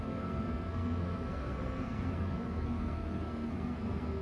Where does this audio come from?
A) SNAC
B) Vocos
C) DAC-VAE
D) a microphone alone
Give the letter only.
A